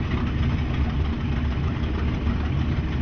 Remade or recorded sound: recorded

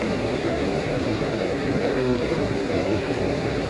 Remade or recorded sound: remade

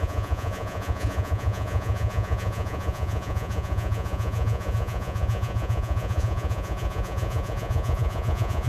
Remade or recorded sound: remade